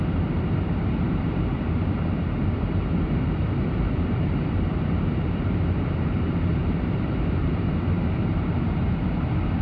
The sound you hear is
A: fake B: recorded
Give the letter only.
A